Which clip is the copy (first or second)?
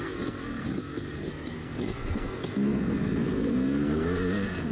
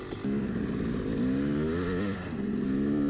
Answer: first